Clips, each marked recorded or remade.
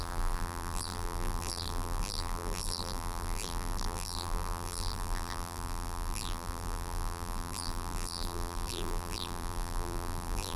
remade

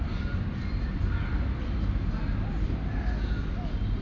recorded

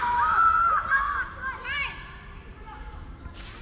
remade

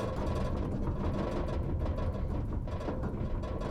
recorded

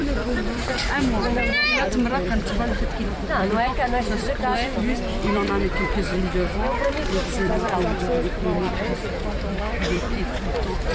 remade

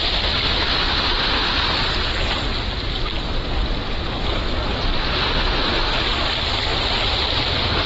recorded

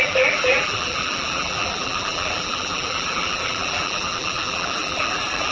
remade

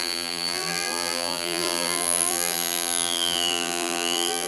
remade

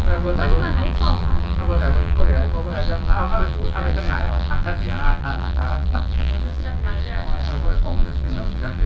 remade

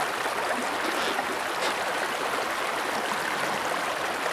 recorded